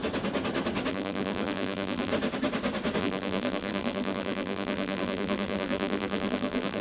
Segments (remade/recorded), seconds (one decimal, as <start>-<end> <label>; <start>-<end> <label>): 0.0-0.9 recorded; 0.9-2.1 remade; 2.1-3.0 recorded; 3.0-6.8 remade